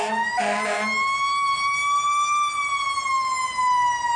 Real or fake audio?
real